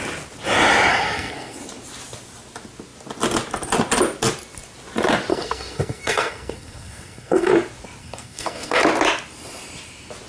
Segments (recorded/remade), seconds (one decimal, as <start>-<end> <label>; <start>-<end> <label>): 0.0-0.9 recorded; 0.9-1.6 remade; 1.6-5.3 recorded; 5.3-7.5 remade; 7.5-8.0 recorded; 8.0-8.8 remade; 8.8-10.3 recorded